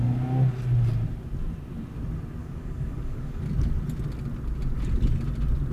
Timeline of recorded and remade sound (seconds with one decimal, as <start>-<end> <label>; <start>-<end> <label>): 0.0-2.4 recorded; 2.4-3.4 remade; 3.4-5.7 recorded